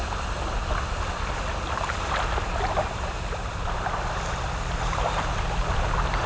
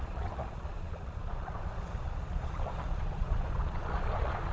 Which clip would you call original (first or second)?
first